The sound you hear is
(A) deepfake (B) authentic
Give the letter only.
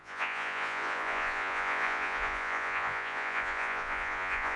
A